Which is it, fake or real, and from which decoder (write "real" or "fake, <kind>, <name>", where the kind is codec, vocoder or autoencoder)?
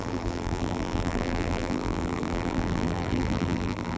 fake, vocoder, BigVGAN v2